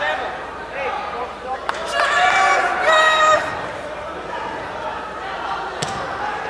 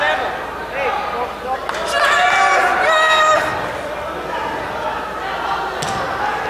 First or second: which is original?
second